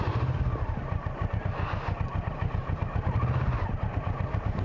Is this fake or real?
real